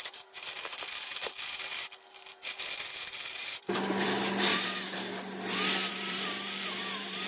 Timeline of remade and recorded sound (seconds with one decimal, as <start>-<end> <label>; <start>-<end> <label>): 0.0-0.7 remade; 0.7-2.9 recorded; 2.9-4.5 remade; 4.5-5.9 recorded; 5.9-7.3 remade